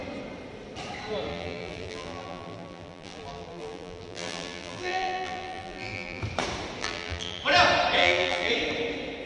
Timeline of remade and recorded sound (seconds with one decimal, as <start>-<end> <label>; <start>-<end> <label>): 0.0-1.3 recorded; 1.3-6.2 remade; 6.2-6.8 recorded; 6.8-7.4 remade; 7.4-8.0 recorded; 8.0-8.5 remade; 8.5-9.3 recorded